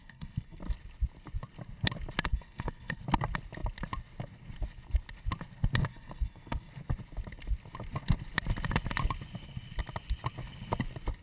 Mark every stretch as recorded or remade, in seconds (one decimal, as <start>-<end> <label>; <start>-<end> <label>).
0.0-0.6 remade; 0.6-2.3 recorded; 2.3-3.0 remade; 3.0-5.9 recorded; 5.9-6.7 remade; 6.7-11.2 recorded